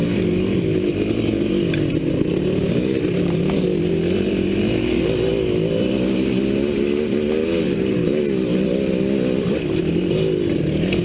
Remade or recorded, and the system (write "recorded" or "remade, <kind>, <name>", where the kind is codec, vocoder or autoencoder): recorded